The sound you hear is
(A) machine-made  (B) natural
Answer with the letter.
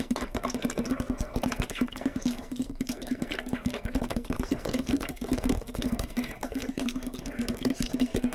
A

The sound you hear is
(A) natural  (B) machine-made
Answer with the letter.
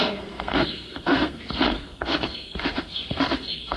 B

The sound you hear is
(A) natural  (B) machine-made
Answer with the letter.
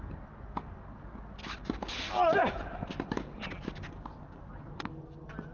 A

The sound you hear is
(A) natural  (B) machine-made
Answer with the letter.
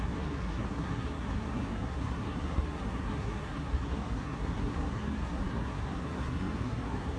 B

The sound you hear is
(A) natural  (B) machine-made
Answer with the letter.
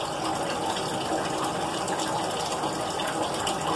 A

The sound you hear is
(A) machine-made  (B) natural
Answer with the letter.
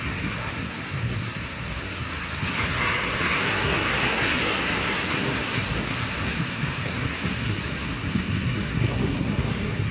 A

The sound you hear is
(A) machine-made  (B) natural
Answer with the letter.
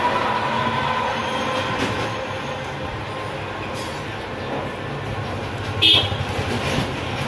B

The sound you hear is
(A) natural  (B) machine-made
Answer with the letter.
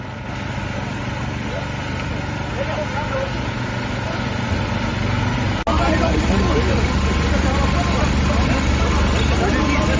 A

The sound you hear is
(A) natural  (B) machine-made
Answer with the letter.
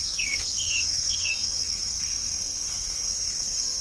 B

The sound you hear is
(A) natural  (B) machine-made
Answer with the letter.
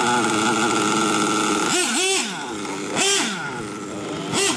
A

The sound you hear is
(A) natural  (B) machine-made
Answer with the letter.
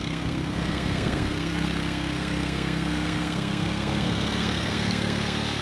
B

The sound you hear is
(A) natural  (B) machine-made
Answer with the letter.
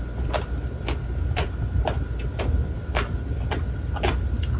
A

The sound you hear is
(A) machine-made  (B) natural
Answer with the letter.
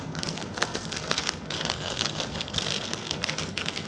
A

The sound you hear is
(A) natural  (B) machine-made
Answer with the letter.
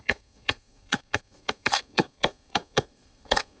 B